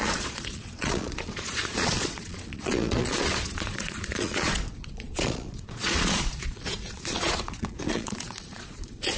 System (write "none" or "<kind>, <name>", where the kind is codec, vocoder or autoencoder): vocoder, Vocos